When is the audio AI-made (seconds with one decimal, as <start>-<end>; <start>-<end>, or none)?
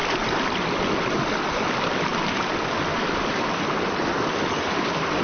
none